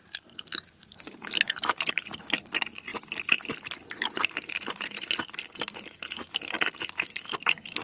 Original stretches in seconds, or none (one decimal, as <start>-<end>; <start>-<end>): 1.9-2.9; 6.5-7.8